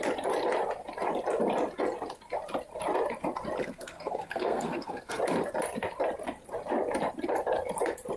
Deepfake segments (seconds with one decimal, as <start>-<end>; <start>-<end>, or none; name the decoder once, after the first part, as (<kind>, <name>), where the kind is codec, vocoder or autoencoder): 3.6-5.2 (codec, SNAC)